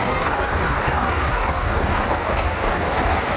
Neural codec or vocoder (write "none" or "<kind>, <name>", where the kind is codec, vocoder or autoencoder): codec, DAC